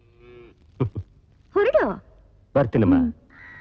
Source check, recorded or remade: recorded